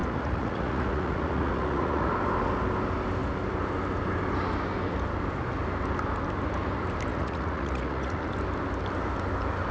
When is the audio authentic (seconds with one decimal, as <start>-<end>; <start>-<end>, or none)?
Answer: 2.1-7.1; 8.3-9.7